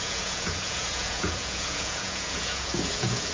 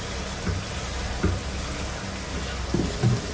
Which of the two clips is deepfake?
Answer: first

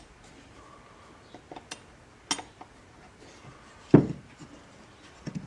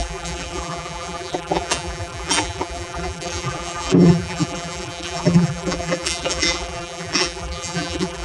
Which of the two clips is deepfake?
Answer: second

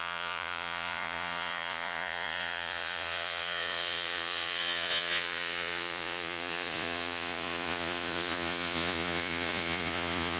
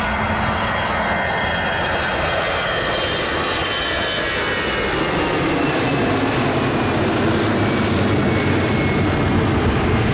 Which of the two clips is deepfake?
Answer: first